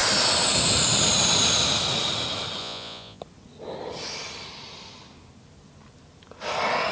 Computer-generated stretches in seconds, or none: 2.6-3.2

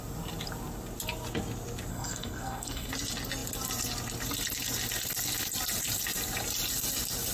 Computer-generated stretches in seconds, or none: 1.9-2.9

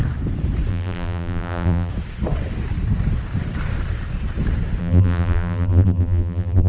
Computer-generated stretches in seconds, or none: 0.7-1.9; 4.8-6.7

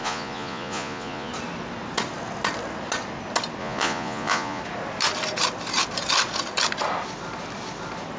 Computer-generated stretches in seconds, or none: 0.0-1.3; 3.6-4.6

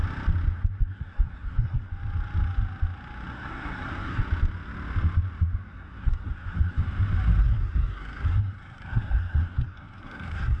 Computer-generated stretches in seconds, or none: 0.8-1.9; 3.3-4.2; 5.7-6.8; 7.4-10.6